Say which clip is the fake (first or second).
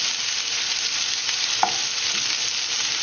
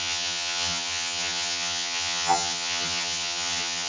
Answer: second